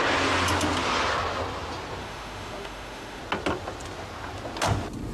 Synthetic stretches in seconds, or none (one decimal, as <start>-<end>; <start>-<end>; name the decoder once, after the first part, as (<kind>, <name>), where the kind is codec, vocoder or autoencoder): 2.0-3.2 (autoencoder, DAC-VAE)